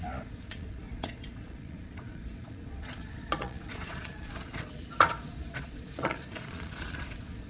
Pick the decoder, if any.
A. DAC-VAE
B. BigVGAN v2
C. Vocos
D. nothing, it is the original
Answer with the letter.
C